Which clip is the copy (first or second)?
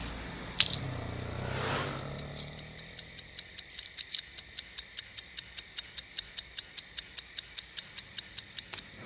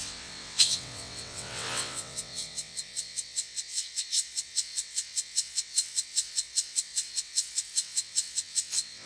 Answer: second